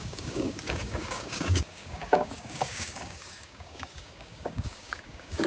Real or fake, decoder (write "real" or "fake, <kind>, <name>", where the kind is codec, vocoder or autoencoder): fake, codec, DAC